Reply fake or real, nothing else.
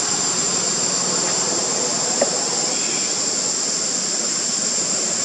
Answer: real